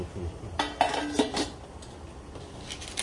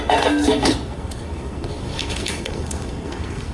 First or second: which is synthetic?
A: second